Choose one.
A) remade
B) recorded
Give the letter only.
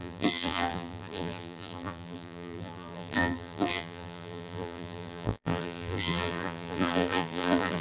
A